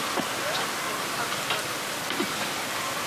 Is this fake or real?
real